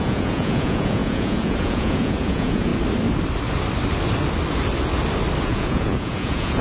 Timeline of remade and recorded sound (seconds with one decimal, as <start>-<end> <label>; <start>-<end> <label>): 0.0-2.7 remade; 2.7-5.4 recorded; 5.4-6.6 remade